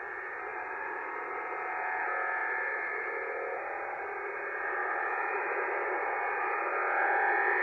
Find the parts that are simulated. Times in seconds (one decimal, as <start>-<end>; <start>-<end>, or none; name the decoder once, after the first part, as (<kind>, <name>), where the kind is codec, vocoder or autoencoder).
2.4-3.1 (vocoder, BigVGAN v2)

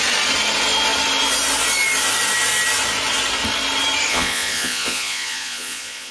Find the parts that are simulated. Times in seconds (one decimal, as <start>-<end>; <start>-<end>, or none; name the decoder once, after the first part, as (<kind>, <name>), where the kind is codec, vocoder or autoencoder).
4.1-6.1 (vocoder, Vocos)

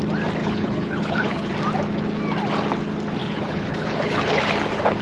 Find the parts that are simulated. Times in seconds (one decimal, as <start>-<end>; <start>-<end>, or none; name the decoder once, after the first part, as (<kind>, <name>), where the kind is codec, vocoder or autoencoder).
0.4-1.5 (codec, HILCodec); 3.2-4.4

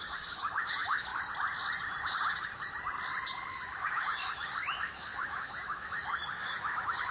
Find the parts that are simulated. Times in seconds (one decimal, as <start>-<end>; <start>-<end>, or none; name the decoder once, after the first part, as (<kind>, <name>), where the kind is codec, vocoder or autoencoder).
0.0-1.1 (autoencoder, DAC-VAE); 3.5-7.1

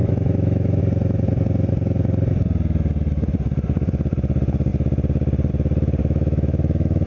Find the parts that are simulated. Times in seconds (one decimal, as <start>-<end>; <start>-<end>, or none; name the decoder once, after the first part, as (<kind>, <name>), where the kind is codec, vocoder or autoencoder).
0.0-0.8 (autoencoder, DAC-VAE); 6.0-7.1

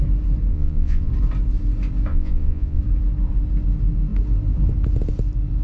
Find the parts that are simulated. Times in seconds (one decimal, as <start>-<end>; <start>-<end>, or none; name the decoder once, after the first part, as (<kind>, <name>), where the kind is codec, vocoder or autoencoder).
0.5-1.1 (vocoder, Vocos); 2.1-2.8

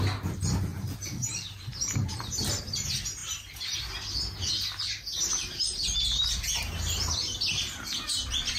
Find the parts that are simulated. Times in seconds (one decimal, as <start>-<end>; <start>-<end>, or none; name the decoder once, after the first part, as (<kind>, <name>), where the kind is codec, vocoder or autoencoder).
0.7-2.6 (vocoder, BigVGAN v2)